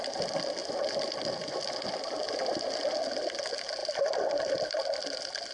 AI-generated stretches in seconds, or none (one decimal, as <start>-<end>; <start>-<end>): none